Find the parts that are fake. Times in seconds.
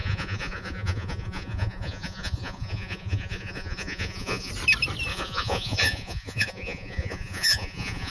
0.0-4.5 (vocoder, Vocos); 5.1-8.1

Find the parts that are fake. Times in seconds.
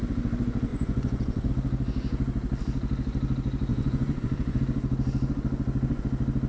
0.7-1.5 (vocoder, Vocos); 3.7-4.6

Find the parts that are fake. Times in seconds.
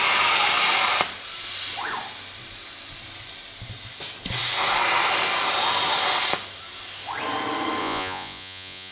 7.8-8.9 (vocoder, Vocos)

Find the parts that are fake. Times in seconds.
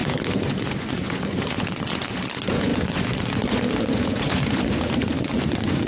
0.0-5.9 (vocoder, Vocos)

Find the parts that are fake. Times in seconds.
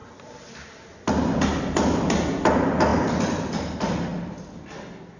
none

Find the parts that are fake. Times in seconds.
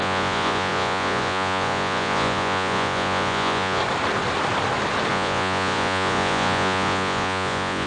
0.0-3.8 (vocoder, Vocos); 5.1-7.9